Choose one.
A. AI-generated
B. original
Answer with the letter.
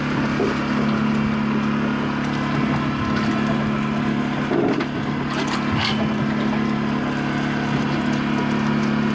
B